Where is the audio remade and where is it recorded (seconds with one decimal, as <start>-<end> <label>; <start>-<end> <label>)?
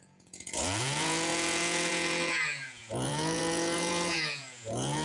0.0-5.0 remade